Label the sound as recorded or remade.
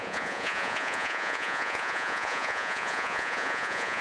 remade